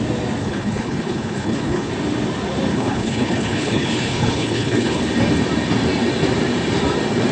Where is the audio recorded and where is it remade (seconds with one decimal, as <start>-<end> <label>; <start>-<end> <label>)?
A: 0.0-0.4 recorded; 0.4-1.9 remade; 1.9-2.7 recorded; 2.7-5.0 remade; 5.0-7.3 recorded

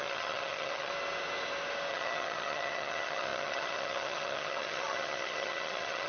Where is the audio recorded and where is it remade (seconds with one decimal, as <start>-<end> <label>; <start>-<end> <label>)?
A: 0.0-0.9 remade; 0.9-1.9 recorded; 1.9-6.1 remade

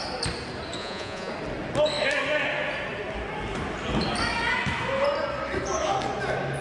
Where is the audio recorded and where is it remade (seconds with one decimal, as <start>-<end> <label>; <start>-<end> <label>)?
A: 0.0-0.8 recorded; 0.8-1.3 remade; 1.3-6.6 recorded

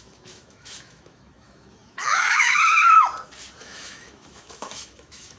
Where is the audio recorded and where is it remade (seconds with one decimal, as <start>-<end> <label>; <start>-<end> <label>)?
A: 0.0-2.8 remade; 2.8-3.6 recorded; 3.6-5.4 remade

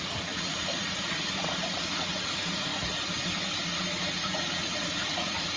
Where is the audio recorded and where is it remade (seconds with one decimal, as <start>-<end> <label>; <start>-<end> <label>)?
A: 0.0-2.7 remade; 2.7-3.6 recorded; 3.6-5.6 remade

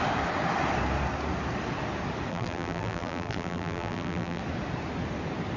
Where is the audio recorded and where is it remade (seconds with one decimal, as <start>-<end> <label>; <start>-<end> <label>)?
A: 0.0-2.3 recorded; 2.3-4.4 remade; 4.4-5.6 recorded

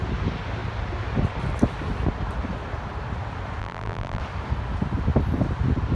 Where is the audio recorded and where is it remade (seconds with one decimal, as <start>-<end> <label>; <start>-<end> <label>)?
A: 0.0-3.6 recorded; 3.6-4.2 remade; 4.2-6.0 recorded

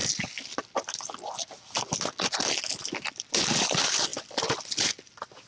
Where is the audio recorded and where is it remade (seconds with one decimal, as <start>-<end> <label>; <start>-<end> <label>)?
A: 0.0-0.6 remade; 0.6-4.1 recorded; 4.1-4.9 remade; 4.9-5.5 recorded